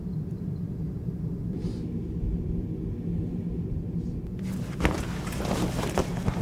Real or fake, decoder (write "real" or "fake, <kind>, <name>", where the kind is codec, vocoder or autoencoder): real